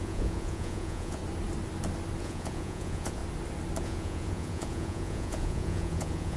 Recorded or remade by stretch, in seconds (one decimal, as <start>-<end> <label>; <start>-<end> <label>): 0.0-1.2 remade; 1.2-2.2 recorded; 2.2-3.2 remade; 3.2-3.8 recorded; 3.8-6.4 remade